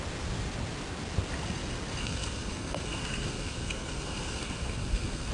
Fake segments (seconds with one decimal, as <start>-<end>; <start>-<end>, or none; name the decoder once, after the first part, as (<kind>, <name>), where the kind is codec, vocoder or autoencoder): 2.0-5.3 (codec, SNAC)